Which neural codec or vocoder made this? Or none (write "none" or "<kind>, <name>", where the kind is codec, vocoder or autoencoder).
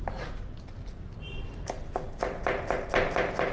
none